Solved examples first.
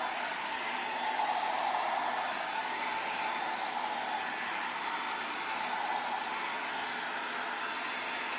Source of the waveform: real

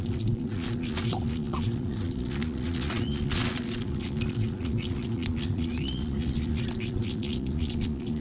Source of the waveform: fake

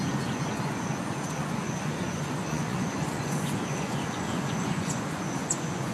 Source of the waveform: fake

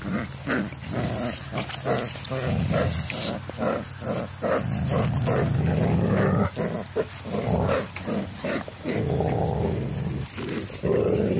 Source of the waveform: real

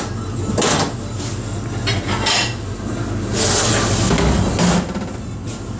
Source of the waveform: real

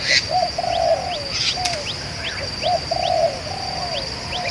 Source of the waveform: real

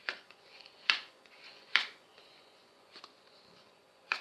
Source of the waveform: fake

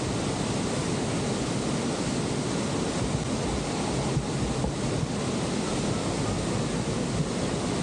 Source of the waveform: real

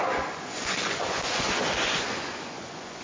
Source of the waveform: fake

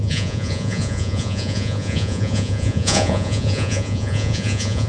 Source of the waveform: fake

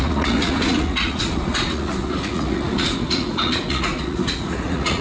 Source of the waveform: fake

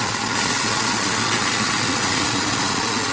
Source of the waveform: fake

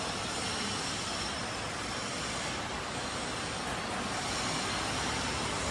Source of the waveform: real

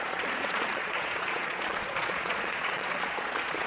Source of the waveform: fake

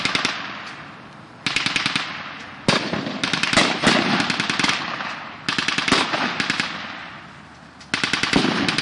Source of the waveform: real